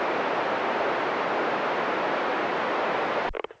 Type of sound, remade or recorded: recorded